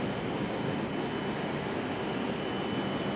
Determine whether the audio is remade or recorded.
recorded